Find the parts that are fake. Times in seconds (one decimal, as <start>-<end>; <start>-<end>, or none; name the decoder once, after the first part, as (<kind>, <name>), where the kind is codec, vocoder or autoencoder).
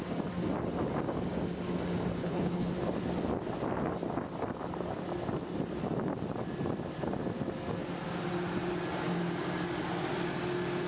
2.2-2.7 (codec, HILCodec)